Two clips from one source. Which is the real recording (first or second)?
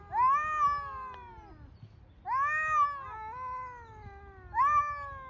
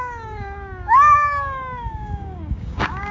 first